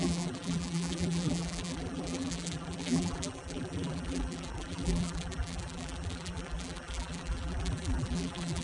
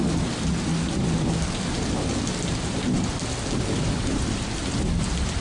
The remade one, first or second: first